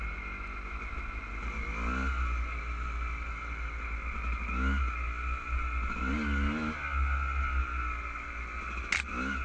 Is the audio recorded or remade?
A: recorded